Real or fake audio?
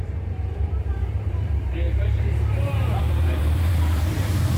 fake